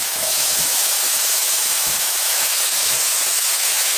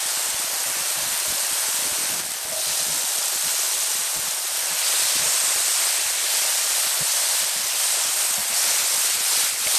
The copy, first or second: first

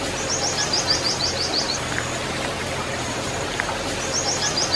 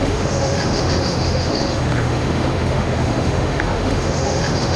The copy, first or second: second